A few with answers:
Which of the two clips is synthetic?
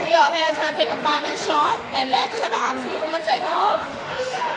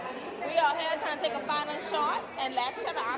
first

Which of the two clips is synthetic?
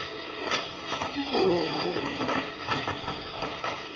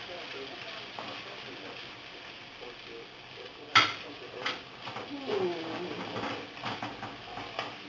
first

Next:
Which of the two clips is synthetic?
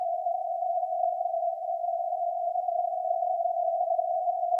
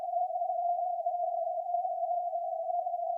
second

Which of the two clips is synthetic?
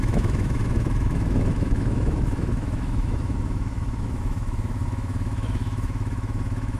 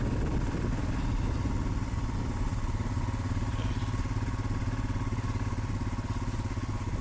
first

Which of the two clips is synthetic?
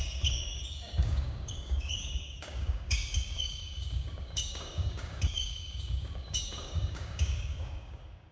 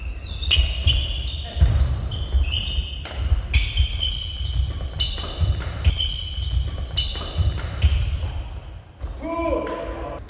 first